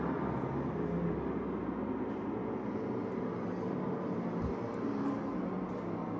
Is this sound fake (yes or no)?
no